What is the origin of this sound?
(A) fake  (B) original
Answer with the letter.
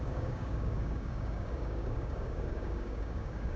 A